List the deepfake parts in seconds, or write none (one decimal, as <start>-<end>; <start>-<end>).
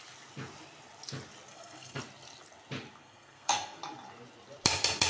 1.5-2.0; 3.0-3.8